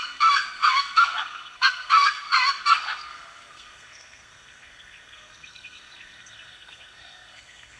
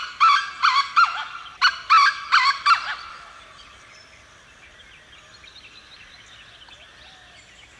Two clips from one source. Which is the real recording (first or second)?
second